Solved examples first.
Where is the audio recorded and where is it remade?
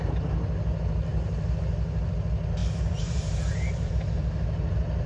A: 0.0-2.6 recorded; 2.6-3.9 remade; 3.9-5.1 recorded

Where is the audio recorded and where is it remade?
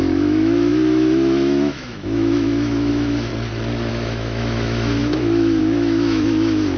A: 0.0-3.3 remade; 3.3-3.9 recorded; 3.9-6.8 remade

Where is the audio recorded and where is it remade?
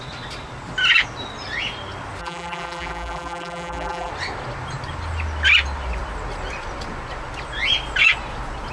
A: 0.0-2.2 recorded; 2.2-4.1 remade; 4.1-8.7 recorded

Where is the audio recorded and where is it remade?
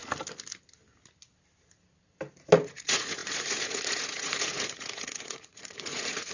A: 0.0-2.6 recorded; 2.6-6.3 remade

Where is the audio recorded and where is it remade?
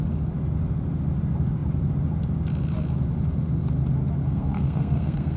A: 0.0-4.2 recorded; 4.2-5.4 remade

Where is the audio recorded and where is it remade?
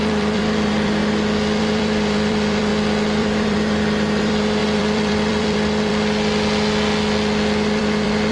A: 0.0-1.0 remade; 1.0-1.6 recorded; 1.6-2.7 remade; 2.7-3.2 recorded; 3.2-5.9 remade; 5.9-7.8 recorded; 7.8-8.3 remade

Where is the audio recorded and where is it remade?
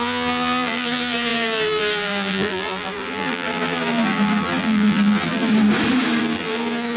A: 0.0-5.5 remade; 5.5-6.2 recorded; 6.2-7.0 remade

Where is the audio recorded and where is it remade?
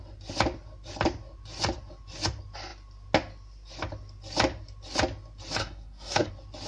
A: 0.0-5.6 recorded; 5.6-6.3 remade; 6.3-6.7 recorded